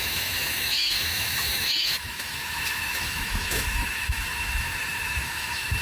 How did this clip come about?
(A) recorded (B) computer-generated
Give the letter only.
B